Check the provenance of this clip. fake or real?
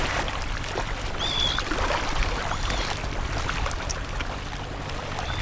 real